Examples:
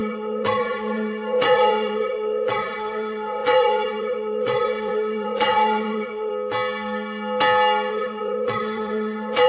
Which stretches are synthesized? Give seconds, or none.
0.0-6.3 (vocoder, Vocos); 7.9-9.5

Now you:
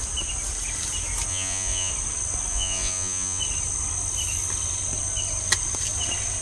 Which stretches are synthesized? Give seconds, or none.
1.3-1.9 (vocoder, Vocos); 2.5-3.4

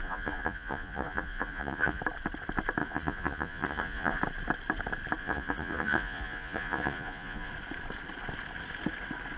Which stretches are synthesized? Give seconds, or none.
0.0-2.0 (vocoder, Vocos); 2.8-4.2; 5.2-7.5

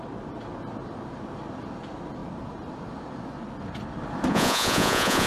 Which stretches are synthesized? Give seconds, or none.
4.3-5.3 (vocoder, Vocos)

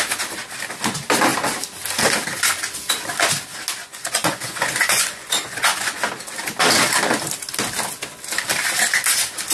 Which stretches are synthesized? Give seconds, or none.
3.8-6.0 (vocoder, Vocos)

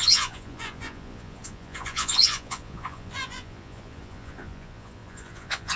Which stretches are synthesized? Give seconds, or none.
0.0-5.8 (vocoder, Vocos)